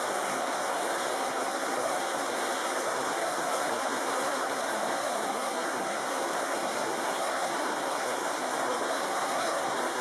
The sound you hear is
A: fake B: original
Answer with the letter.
A